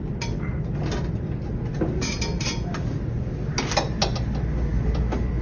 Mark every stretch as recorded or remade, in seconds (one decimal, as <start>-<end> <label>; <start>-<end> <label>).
0.0-5.4 recorded

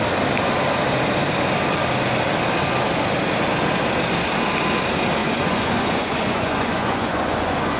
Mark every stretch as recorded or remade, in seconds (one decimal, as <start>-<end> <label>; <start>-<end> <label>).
0.0-5.2 recorded; 5.2-7.8 remade

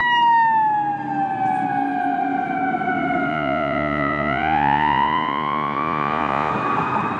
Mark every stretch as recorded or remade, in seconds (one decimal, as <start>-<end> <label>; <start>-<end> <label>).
0.0-3.3 recorded; 3.3-6.5 remade; 6.5-7.2 recorded

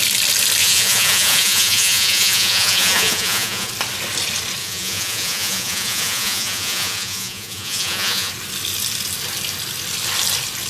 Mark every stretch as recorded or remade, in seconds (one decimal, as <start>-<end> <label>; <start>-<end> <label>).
0.0-0.6 recorded; 0.6-3.7 remade; 3.7-4.6 recorded; 4.6-8.3 remade; 8.3-10.7 recorded

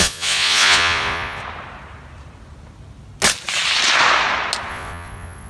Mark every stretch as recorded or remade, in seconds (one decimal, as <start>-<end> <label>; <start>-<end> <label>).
0.0-1.4 remade; 1.4-4.7 recorded; 4.7-5.5 remade

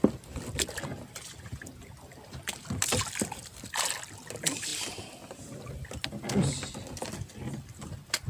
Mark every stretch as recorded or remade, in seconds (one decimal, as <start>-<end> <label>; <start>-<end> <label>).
0.0-8.3 recorded